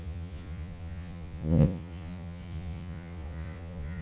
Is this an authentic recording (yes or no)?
no